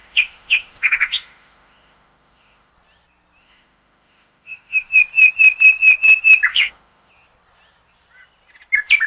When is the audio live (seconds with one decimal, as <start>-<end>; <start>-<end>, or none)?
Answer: 2.7-3.4; 4.9-6.5; 7.1-9.1